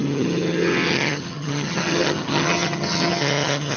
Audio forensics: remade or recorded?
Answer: remade